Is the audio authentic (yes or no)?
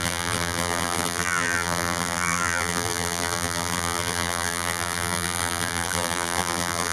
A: no